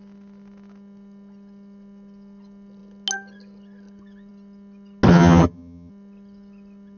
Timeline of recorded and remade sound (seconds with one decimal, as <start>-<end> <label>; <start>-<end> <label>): 0.0-5.1 recorded; 5.1-5.9 remade; 5.9-7.0 recorded